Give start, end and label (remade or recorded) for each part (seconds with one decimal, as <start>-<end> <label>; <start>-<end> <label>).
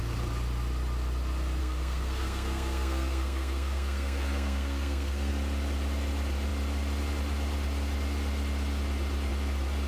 0.0-1.6 recorded; 1.6-5.3 remade; 5.3-9.9 recorded